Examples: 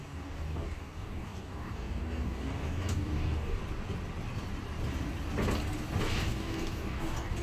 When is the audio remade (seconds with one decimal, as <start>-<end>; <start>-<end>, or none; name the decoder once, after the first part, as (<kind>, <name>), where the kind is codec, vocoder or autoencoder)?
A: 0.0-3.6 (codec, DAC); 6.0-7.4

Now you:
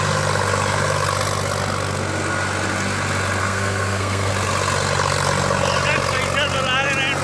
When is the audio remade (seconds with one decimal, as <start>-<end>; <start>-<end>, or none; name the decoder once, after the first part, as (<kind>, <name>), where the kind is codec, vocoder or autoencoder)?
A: 3.4-4.3 (codec, SNAC)

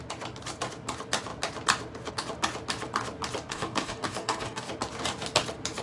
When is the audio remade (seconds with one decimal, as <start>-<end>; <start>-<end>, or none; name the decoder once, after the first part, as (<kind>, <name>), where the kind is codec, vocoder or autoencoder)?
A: 3.5-4.7 (codec, DAC)